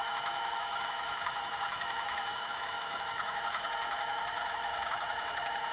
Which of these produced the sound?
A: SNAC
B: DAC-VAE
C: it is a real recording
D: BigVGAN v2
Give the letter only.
B